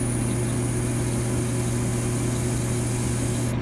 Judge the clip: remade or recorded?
recorded